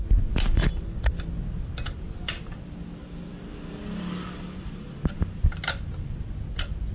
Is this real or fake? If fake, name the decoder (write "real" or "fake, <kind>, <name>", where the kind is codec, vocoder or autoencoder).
real